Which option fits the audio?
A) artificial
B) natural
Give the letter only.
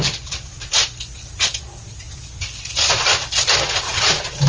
B